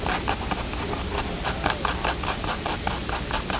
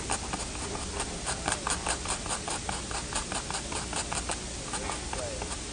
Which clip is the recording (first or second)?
second